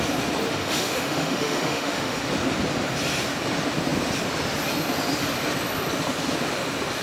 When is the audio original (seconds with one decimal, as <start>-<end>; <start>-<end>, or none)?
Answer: 0.0-0.6; 2.2-7.0